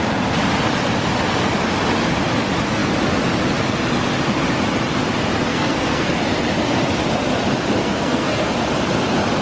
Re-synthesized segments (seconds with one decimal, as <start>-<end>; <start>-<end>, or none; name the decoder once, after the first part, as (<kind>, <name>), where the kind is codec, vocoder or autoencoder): 5.5-6.2 (codec, SNAC); 7.8-8.5